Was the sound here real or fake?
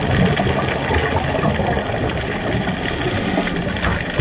real